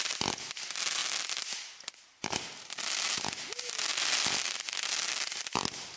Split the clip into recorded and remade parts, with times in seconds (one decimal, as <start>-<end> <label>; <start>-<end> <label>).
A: 0.0-1.0 recorded; 1.0-3.4 remade; 3.4-3.9 recorded; 3.9-4.7 remade; 4.7-6.0 recorded